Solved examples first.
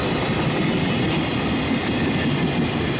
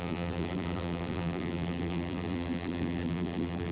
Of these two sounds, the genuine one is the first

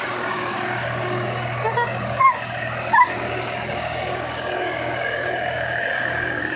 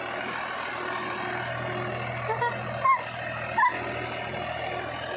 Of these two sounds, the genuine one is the second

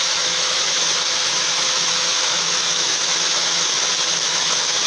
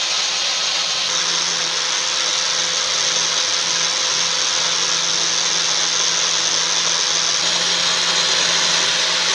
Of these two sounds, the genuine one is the second